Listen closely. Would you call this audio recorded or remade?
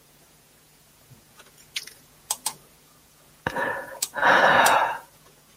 remade